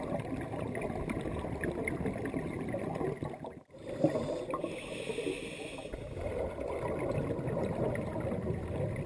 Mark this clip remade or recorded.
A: recorded